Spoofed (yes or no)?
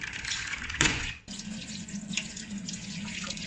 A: yes